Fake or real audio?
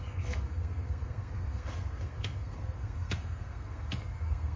fake